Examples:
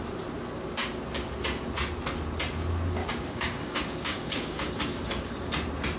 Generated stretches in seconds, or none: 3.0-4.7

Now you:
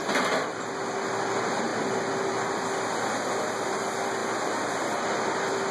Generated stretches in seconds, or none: none

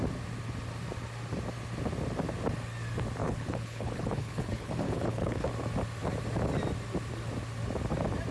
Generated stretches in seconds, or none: 3.2-5.5